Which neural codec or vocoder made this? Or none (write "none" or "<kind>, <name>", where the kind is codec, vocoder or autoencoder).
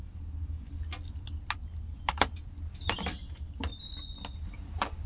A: none